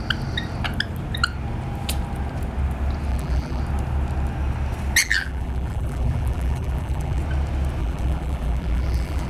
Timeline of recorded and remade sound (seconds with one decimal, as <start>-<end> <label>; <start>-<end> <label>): 0.0-3.1 recorded; 3.1-3.6 remade; 3.6-5.0 recorded; 5.0-7.2 remade; 7.2-7.8 recorded; 7.8-9.3 remade